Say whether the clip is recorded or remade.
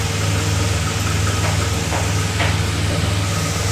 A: recorded